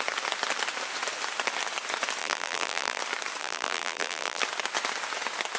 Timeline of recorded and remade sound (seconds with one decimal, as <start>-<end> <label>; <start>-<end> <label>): 0.0-2.2 recorded; 2.2-3.0 remade; 3.0-3.4 recorded; 3.4-4.4 remade; 4.4-5.6 recorded